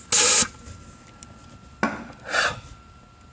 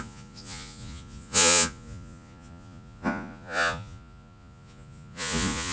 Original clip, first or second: first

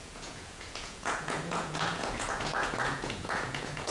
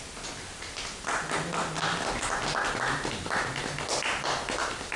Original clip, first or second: second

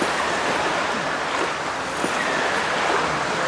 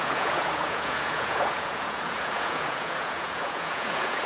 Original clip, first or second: first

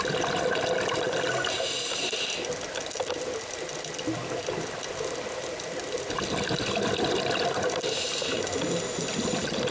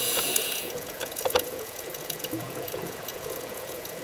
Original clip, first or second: first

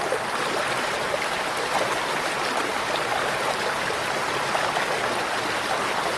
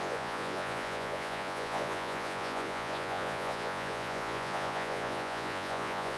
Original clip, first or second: first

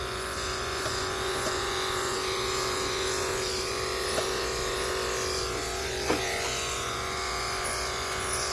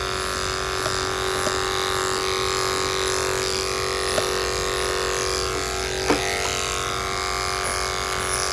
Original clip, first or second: second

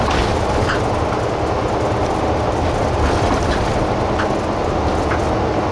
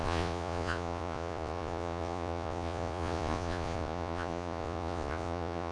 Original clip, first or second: first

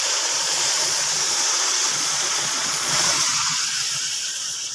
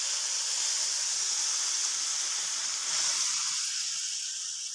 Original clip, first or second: second